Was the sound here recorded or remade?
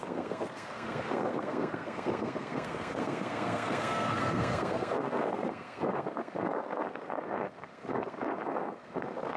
remade